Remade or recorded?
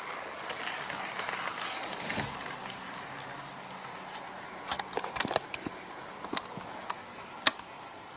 recorded